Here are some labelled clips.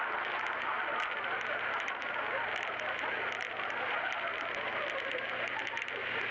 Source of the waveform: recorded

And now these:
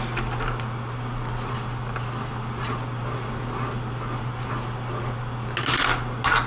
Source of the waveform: recorded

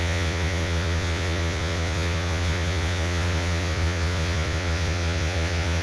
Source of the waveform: remade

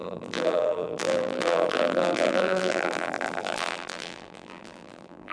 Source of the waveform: remade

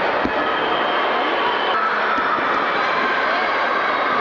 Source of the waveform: recorded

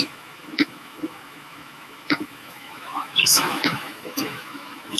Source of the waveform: remade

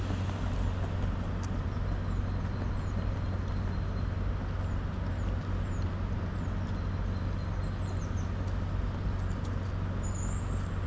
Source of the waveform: recorded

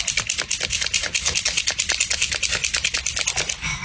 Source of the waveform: recorded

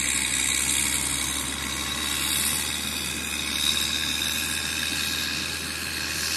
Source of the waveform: recorded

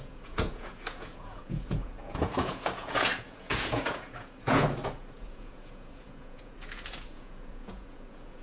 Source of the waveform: remade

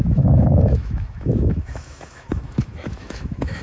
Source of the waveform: remade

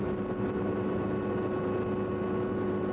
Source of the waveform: recorded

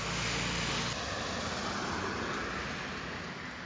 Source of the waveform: recorded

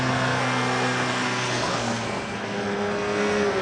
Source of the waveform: remade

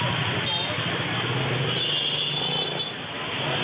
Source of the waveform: recorded